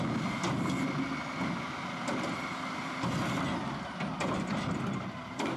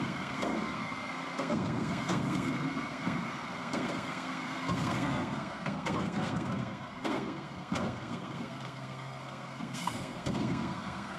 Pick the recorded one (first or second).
first